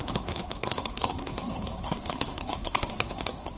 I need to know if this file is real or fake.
fake